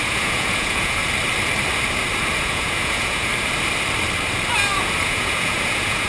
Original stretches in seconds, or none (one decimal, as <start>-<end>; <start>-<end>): 1.0-2.4; 3.3-5.0

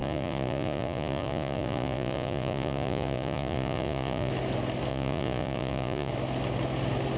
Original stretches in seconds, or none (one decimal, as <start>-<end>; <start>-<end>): 4.3-4.9; 6.1-7.2